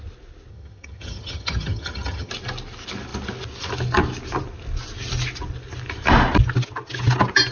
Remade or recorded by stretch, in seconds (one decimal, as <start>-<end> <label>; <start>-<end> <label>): 0.0-0.5 recorded; 0.5-2.3 remade; 2.3-7.5 recorded